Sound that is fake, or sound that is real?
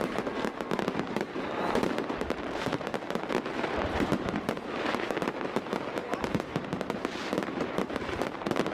fake